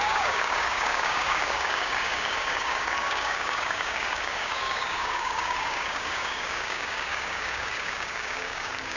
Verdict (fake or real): fake